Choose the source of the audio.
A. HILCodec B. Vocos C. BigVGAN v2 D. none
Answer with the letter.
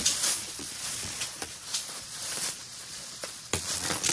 B